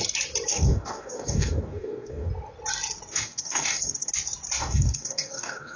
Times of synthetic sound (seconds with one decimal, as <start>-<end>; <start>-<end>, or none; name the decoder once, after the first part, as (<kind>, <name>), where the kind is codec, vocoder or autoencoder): 0.5-2.3 (codec, DAC); 3.1-4.1; 4.6-5.8